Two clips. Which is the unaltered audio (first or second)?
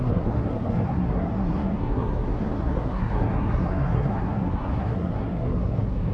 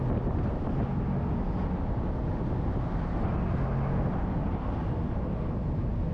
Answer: second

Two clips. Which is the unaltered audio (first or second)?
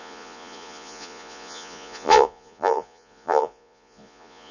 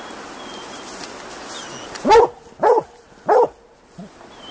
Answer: second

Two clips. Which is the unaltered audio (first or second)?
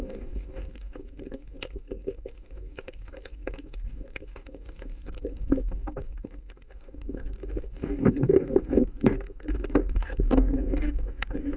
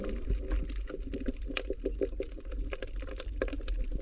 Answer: second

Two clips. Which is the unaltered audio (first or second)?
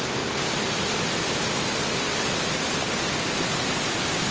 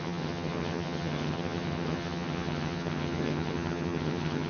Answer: first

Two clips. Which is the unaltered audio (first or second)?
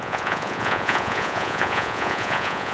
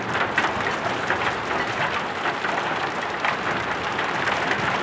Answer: second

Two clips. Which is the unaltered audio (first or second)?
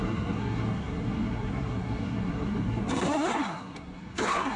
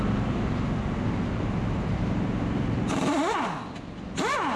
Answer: second